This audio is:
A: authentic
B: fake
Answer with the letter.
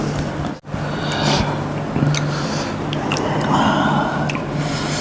A